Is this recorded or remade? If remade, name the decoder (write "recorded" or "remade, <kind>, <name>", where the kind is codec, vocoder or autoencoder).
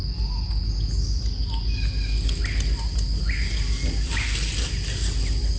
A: recorded